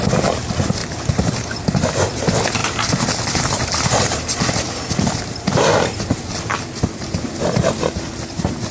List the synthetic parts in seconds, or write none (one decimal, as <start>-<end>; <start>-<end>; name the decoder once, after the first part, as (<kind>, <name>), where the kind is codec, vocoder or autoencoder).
none